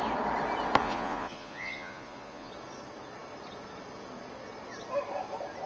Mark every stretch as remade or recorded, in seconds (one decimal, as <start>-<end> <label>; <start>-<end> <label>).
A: 0.0-0.8 recorded; 0.8-2.5 remade; 2.5-5.7 recorded